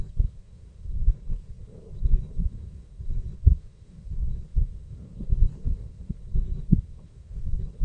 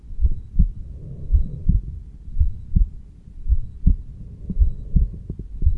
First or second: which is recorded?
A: second